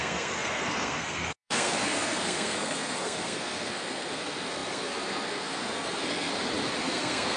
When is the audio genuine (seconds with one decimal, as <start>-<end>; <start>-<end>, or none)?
6.3-6.8